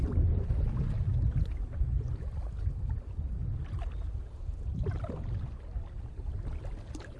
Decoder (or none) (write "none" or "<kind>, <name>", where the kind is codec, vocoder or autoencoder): none